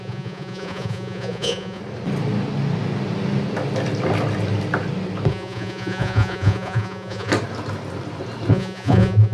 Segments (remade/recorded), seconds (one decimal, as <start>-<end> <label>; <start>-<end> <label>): 0.0-1.8 remade; 1.8-5.3 recorded; 5.3-7.3 remade; 7.3-8.5 recorded; 8.5-9.3 remade

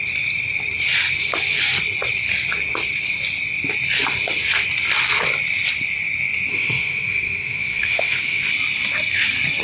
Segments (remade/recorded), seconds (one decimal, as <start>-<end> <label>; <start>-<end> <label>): 0.0-6.5 recorded; 6.5-8.5 remade; 8.5-9.6 recorded

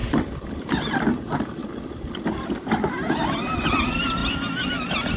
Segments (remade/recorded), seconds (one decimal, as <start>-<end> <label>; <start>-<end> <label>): 0.0-0.8 remade; 0.8-1.6 recorded; 1.6-2.9 remade; 2.9-5.2 recorded

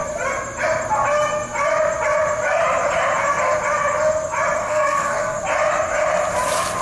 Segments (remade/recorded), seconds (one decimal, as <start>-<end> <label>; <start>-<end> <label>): 0.0-4.6 recorded; 4.6-5.4 remade; 5.4-6.8 recorded

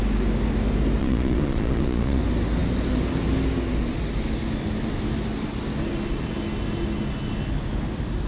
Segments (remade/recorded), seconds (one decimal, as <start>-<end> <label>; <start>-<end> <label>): 0.0-1.0 recorded; 1.0-2.2 remade; 2.2-8.3 recorded

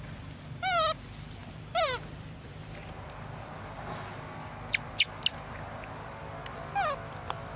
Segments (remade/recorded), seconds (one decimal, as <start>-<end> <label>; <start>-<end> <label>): 0.0-1.4 recorded; 1.4-3.5 remade; 3.5-7.6 recorded

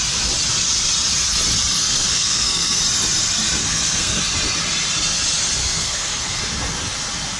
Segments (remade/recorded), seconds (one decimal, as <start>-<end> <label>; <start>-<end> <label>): 0.0-1.8 recorded; 1.8-2.8 remade; 2.8-3.6 recorded; 3.6-4.2 remade; 4.2-5.6 recorded; 5.6-6.4 remade; 6.4-7.4 recorded

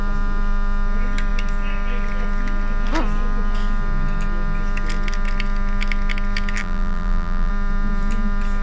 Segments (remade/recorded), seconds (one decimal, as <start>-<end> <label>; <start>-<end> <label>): 0.0-6.6 recorded; 6.6-7.5 remade; 7.5-8.6 recorded